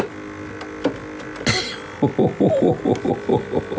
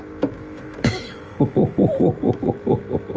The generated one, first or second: second